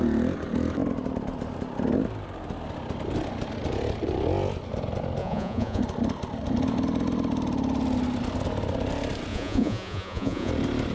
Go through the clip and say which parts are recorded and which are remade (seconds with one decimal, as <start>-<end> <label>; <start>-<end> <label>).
0.0-5.2 recorded; 5.2-5.8 remade; 5.8-9.3 recorded; 9.3-10.5 remade; 10.5-10.9 recorded